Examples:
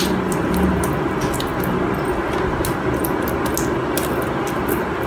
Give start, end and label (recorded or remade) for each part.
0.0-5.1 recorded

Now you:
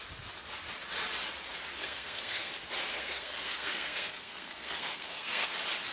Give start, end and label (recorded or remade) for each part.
0.0-1.8 recorded; 1.8-2.5 remade; 2.5-2.9 recorded; 2.9-5.5 remade; 5.5-5.9 recorded

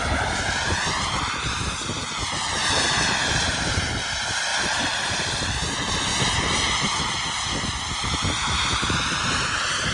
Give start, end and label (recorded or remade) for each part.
0.0-4.5 recorded; 4.5-5.5 remade; 5.5-8.7 recorded; 8.7-9.3 remade; 9.3-9.9 recorded